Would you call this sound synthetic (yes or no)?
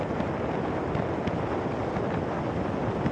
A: no